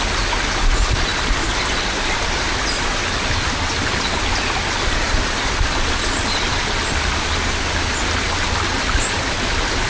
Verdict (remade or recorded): recorded